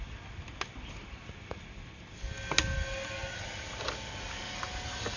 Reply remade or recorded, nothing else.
recorded